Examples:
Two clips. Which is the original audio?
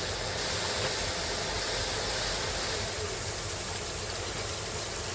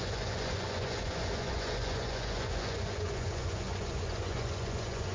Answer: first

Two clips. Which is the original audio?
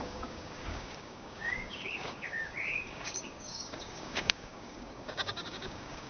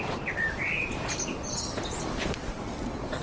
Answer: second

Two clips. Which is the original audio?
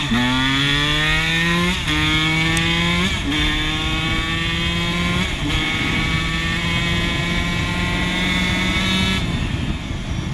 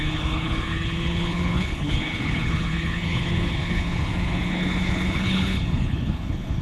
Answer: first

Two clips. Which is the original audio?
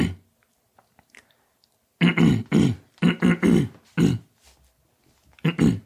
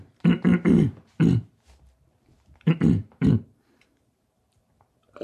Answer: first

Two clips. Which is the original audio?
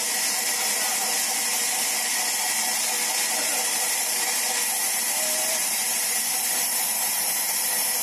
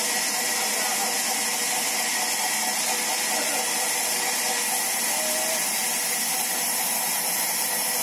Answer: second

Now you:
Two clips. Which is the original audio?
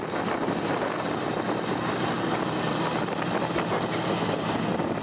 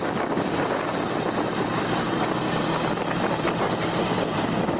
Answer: first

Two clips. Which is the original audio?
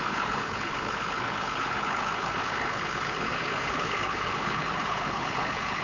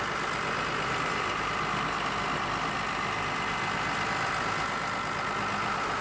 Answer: second